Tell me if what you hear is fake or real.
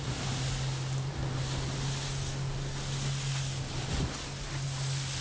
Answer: real